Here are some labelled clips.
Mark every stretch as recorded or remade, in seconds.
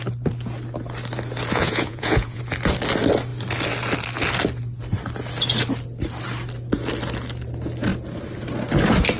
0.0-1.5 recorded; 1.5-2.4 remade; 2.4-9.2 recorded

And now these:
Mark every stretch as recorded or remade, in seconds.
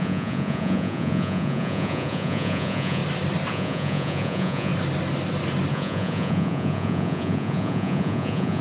0.0-3.0 remade; 3.0-3.5 recorded; 3.5-4.7 remade; 4.7-5.7 recorded; 5.7-8.6 remade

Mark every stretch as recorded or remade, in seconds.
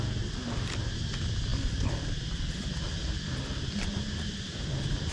0.0-5.1 recorded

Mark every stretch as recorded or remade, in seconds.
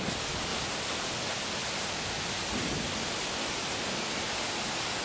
0.0-5.0 recorded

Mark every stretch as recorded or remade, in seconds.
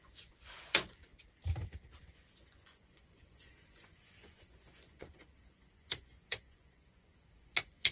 0.0-1.1 remade; 1.1-2.0 recorded; 2.0-7.9 remade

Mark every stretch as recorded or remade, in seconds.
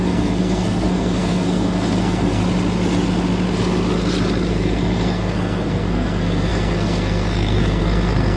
0.0-2.4 remade; 2.4-4.5 recorded; 4.5-8.4 remade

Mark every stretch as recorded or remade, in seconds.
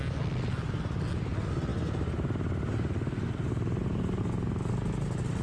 0.0-5.4 recorded